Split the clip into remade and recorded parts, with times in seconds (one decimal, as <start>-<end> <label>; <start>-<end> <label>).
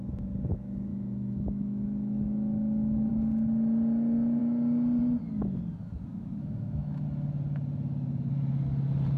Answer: 0.0-0.9 recorded; 0.9-3.1 remade; 3.1-6.1 recorded; 6.1-7.0 remade; 7.0-9.2 recorded